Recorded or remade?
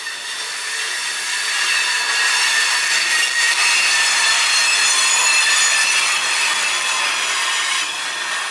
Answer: recorded